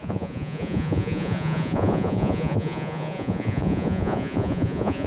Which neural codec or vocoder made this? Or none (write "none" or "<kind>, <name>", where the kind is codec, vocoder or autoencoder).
vocoder, Vocos